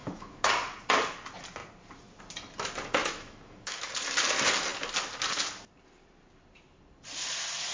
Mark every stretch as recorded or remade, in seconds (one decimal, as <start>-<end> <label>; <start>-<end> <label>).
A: 0.0-0.5 remade; 0.5-3.0 recorded; 3.0-3.9 remade; 3.9-7.7 recorded